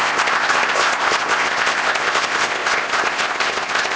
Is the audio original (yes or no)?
no